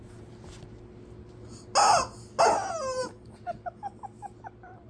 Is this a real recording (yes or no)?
yes